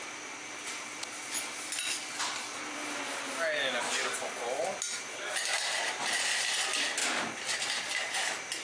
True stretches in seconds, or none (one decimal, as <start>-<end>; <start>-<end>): 0.0-8.6